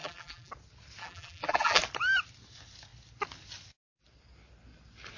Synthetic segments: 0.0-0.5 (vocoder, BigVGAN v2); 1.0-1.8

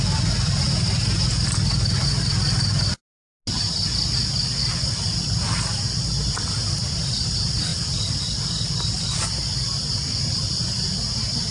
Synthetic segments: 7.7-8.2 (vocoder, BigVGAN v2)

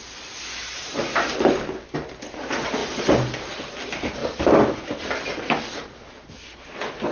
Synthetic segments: none

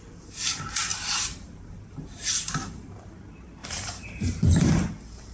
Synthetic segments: 0.9-3.2 (vocoder, BigVGAN v2); 3.6-4.7